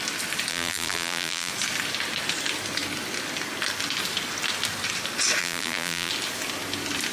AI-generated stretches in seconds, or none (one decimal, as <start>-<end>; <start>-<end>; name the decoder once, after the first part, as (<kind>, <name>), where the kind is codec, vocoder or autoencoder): 0.5-1.5 (vocoder, BigVGAN v2); 5.4-6.1